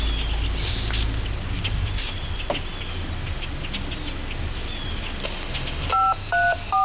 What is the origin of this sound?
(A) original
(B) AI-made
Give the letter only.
A